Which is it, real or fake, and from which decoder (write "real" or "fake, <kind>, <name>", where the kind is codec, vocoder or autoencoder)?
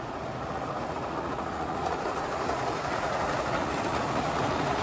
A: fake, vocoder, Vocos